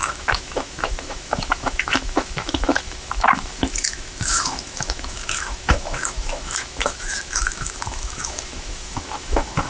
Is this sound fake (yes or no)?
yes